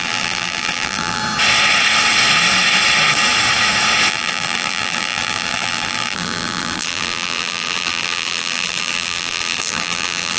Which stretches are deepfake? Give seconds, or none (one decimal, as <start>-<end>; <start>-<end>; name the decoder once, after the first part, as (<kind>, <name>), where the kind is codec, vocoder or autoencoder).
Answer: 0.0-1.2 (vocoder, BigVGAN v2); 4.1-10.4